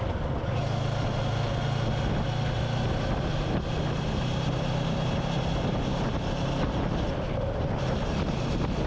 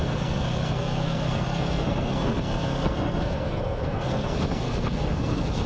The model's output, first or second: second